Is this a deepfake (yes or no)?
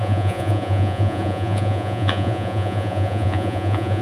yes